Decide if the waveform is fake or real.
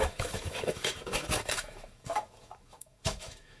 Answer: fake